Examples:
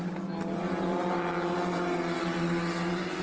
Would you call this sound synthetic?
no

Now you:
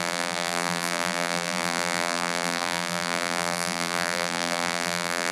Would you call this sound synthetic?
yes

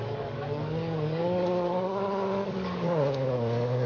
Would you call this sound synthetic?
yes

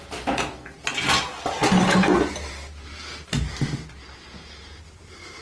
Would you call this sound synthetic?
no